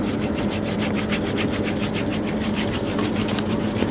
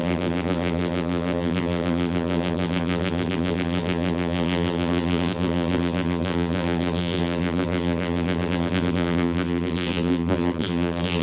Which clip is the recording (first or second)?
first